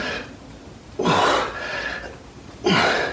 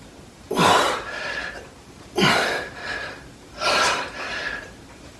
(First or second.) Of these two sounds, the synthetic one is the second